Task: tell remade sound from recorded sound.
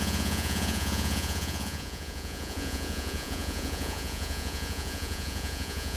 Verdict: remade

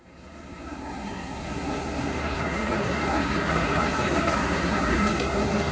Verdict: remade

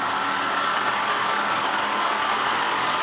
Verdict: remade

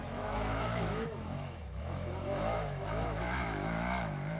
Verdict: remade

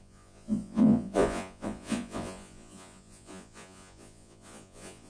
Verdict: remade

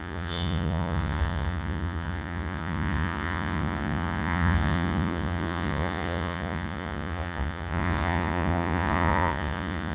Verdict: remade